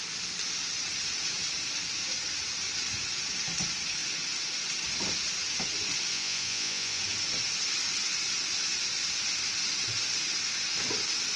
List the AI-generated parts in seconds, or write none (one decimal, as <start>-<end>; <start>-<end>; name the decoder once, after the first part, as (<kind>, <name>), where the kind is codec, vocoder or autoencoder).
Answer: 6.1-7.0 (vocoder, Vocos)